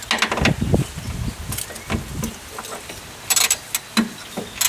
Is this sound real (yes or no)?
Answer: yes